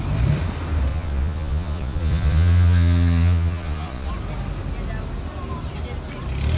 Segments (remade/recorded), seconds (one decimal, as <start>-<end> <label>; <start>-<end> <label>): 0.0-0.9 recorded; 0.9-4.1 remade; 4.1-6.6 recorded